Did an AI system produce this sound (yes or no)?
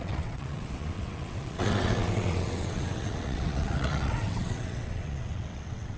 yes